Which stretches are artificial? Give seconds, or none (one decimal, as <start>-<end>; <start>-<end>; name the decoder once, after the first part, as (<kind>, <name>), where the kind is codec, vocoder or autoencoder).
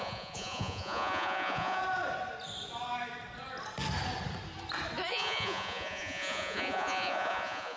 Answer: 0.0-1.8 (vocoder, Vocos); 5.1-7.8